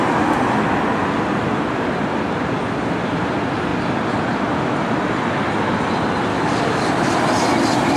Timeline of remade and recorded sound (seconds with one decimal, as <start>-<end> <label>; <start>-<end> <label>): 0.0-6.3 recorded; 6.3-6.9 remade; 6.9-8.0 recorded